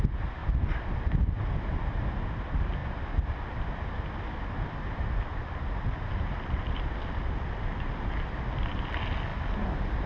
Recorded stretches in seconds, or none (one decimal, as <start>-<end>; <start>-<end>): 0.0-10.1